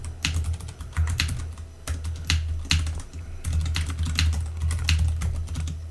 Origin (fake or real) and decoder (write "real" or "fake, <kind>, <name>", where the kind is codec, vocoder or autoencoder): real